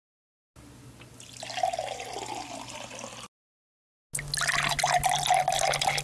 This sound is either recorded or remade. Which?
recorded